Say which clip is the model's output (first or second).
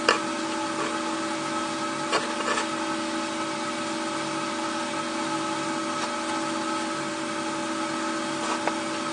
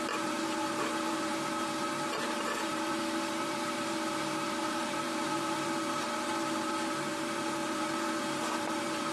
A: second